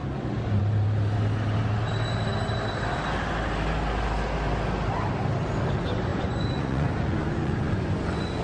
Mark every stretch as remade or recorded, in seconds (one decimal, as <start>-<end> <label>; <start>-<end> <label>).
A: 0.0-6.1 recorded; 6.1-8.4 remade